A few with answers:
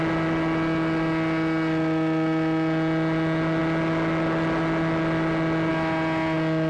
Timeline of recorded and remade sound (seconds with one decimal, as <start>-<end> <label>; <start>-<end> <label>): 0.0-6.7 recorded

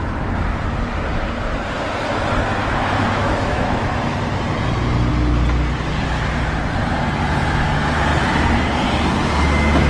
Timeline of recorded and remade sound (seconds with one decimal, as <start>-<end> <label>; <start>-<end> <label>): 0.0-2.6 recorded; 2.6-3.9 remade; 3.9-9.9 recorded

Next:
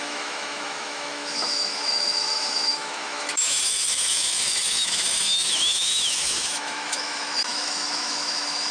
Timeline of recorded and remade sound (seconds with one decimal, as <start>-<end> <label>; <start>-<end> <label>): 0.0-8.7 remade

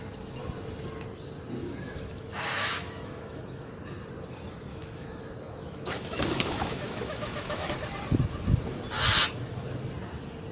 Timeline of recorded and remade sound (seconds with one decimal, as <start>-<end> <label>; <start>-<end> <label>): 0.0-1.6 recorded; 1.6-3.7 remade; 3.7-4.7 recorded; 4.7-7.7 remade; 7.7-10.5 recorded

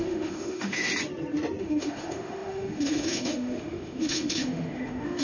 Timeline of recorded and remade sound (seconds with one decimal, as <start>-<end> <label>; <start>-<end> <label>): 0.0-0.9 remade; 0.9-1.6 recorded; 1.6-5.2 remade

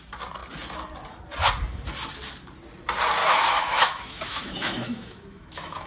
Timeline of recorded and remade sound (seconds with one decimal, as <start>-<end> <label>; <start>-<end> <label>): 0.0-3.2 recorded; 3.2-5.9 remade